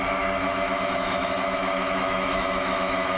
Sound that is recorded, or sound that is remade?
remade